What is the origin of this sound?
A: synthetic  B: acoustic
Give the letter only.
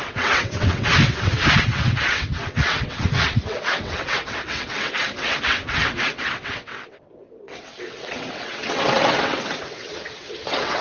A